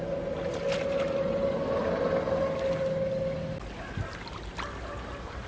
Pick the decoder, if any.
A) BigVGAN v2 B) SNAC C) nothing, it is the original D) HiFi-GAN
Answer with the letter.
C